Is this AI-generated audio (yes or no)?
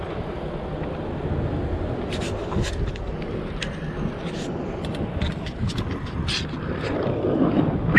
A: no